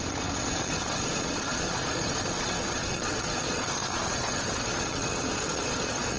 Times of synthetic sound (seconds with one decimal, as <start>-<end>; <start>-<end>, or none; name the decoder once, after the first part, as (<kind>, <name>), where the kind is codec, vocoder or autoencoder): 0.0-6.2 (vocoder, Vocos)